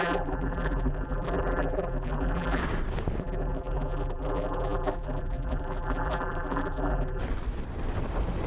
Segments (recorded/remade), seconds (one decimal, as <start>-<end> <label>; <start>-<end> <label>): 0.0-2.6 remade; 2.6-3.2 recorded; 3.2-7.2 remade; 7.2-8.5 recorded